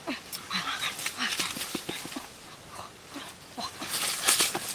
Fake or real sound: real